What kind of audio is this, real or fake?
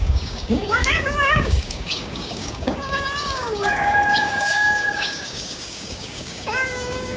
fake